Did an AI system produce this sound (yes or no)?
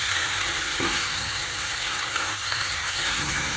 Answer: yes